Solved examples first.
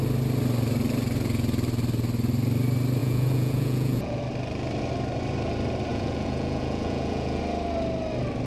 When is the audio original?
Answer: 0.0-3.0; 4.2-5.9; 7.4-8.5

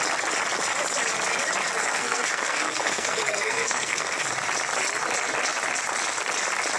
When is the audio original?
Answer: 0.0-1.8; 4.2-6.8

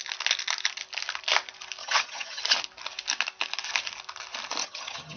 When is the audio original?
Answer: 0.0-1.8; 2.4-4.6

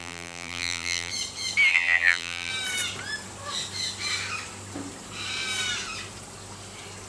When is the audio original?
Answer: 1.1-1.7; 2.5-7.1